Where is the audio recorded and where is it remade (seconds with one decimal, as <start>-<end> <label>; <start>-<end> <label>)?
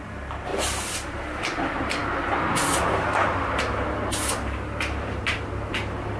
0.0-0.5 recorded; 0.5-1.4 remade; 1.4-6.2 recorded